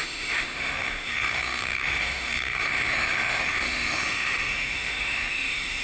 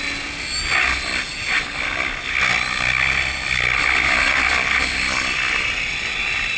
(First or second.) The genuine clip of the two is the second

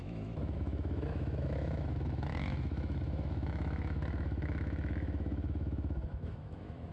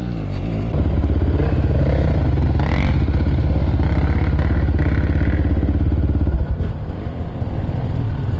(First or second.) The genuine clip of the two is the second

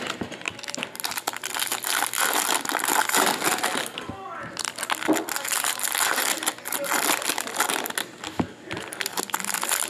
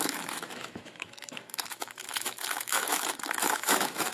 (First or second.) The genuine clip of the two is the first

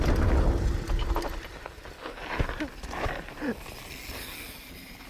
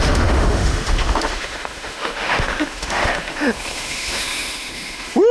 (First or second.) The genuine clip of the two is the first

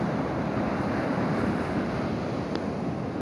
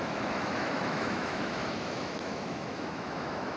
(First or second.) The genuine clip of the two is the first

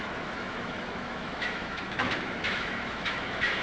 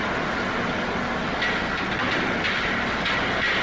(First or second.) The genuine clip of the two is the second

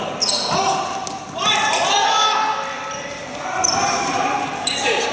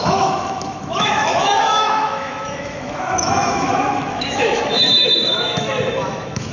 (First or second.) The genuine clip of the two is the first